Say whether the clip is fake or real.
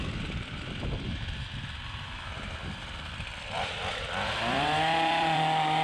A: fake